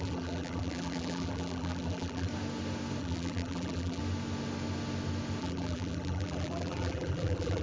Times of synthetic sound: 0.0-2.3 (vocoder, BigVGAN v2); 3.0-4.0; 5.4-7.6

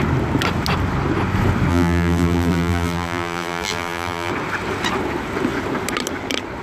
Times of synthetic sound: 1.7-4.3 (vocoder, BigVGAN v2)

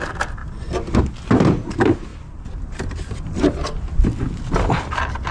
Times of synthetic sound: none

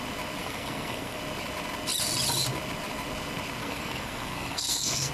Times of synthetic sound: 0.4-1.2 (codec, SNAC); 3.6-5.1

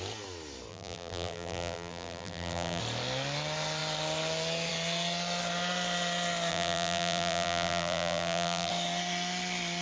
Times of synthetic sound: 0.7-2.8 (vocoder, BigVGAN v2); 6.5-8.7

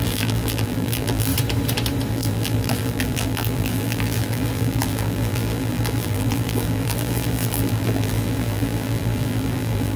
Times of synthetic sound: 0.0-1.3 (vocoder, BigVGAN v2); 2.1-10.0

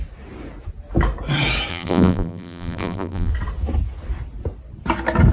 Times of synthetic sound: 1.7-3.3 (vocoder, BigVGAN v2)

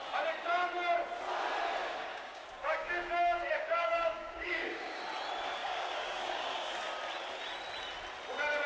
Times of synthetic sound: 1.8-5.0 (codec, DAC); 5.6-6.7